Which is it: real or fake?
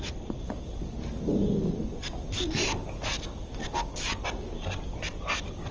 real